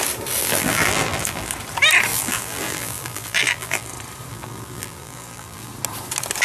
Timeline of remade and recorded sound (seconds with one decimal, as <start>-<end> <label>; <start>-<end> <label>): 0.0-0.4 recorded; 0.4-1.5 remade; 1.5-2.1 recorded; 2.1-3.9 remade; 3.9-4.3 recorded; 4.3-5.7 remade; 5.7-6.4 recorded